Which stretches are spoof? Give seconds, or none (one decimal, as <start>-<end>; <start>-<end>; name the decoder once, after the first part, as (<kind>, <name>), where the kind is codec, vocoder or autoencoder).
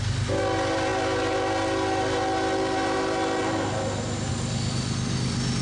none